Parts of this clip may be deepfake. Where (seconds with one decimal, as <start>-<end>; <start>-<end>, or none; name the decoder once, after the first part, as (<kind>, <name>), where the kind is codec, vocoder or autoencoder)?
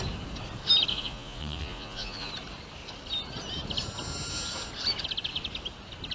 0.9-2.3 (vocoder, Vocos)